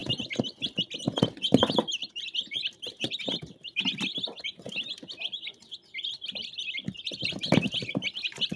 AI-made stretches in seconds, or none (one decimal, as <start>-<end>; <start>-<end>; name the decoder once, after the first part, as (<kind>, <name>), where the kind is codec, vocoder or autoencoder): 1.2-8.6 (vocoder, BigVGAN v2)